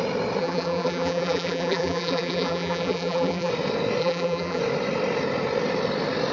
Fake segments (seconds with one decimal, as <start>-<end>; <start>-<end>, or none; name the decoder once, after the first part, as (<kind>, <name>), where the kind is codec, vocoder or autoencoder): 0.4-3.5 (vocoder, BigVGAN v2); 4.0-4.6